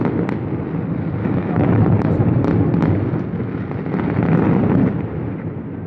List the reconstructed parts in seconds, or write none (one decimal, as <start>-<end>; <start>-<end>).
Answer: 1.2-1.8